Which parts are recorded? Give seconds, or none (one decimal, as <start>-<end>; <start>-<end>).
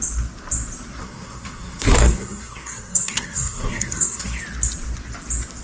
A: 0.0-1.0; 4.4-5.6